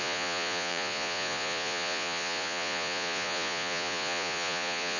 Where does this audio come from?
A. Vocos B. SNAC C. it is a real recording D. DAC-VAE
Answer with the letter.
A